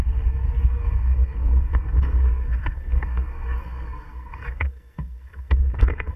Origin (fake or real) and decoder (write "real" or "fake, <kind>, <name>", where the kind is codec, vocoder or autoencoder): fake, codec, SNAC